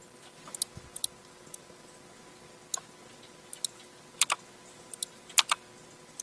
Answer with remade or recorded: recorded